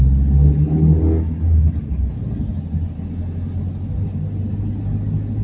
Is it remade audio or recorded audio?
recorded